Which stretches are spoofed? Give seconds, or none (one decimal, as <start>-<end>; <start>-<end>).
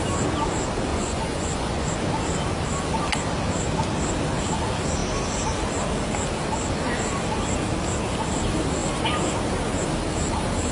0.9-1.9